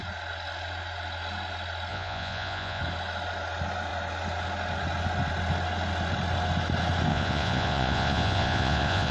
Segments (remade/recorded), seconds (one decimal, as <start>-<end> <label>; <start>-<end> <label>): 0.0-1.9 recorded; 1.9-2.8 remade; 2.8-7.1 recorded; 7.1-9.1 remade